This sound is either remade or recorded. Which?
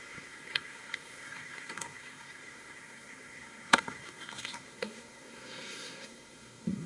remade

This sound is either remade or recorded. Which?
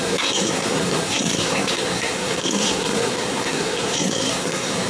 remade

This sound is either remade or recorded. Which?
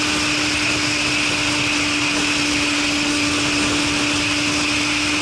recorded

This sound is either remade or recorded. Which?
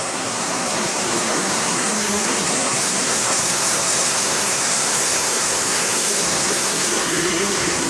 remade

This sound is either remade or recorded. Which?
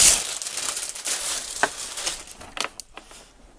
recorded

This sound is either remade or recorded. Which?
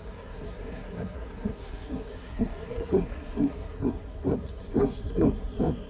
remade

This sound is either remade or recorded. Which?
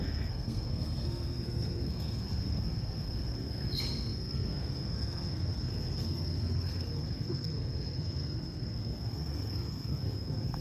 remade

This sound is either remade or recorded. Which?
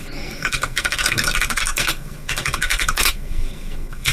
remade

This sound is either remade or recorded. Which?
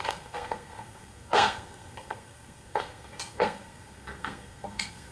remade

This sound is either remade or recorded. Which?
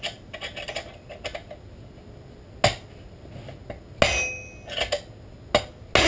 recorded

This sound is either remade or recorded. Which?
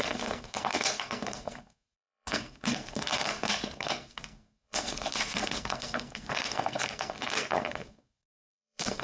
remade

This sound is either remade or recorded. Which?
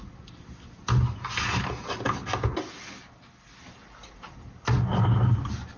recorded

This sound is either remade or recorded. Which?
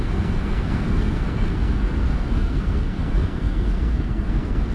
remade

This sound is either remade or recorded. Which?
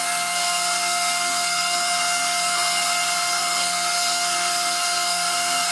remade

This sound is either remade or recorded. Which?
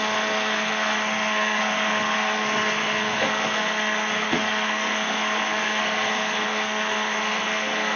remade